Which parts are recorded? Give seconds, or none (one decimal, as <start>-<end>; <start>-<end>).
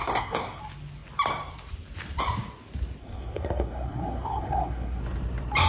0.6-3.0; 5.0-5.7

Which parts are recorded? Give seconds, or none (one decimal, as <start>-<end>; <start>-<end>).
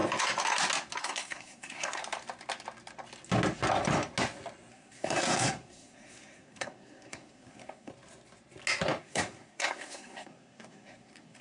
0.0-1.0; 2.0-4.7; 7.9-9.0